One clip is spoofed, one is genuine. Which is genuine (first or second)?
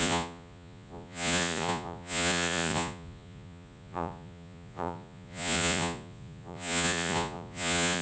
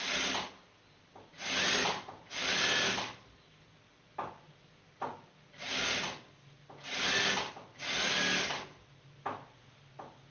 second